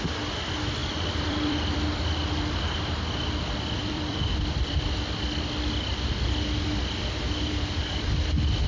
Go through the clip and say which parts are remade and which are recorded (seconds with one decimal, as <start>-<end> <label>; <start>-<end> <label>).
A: 0.0-0.8 recorded; 0.8-2.5 remade; 2.5-3.8 recorded; 3.8-4.8 remade; 4.8-6.7 recorded; 6.7-7.3 remade; 7.3-8.7 recorded